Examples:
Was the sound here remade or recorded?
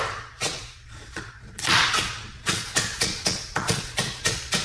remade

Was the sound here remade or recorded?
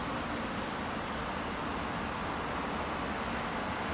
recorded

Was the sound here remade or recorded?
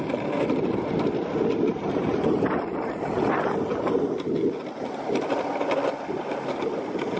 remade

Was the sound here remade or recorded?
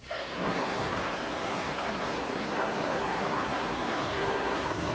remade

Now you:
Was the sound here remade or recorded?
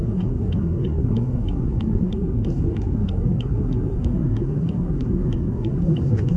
remade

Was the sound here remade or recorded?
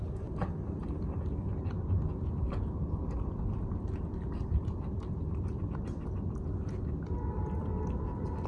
recorded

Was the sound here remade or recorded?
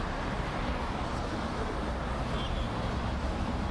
recorded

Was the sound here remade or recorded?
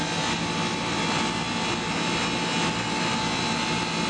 recorded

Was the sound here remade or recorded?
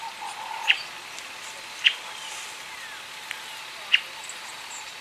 recorded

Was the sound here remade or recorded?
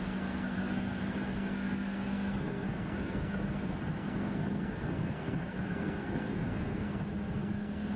remade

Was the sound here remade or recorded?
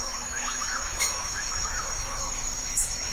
remade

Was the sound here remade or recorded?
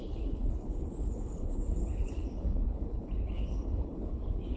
remade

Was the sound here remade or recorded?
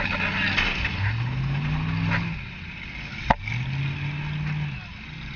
recorded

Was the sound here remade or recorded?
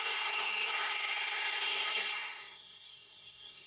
remade